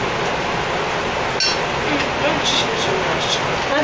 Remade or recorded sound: recorded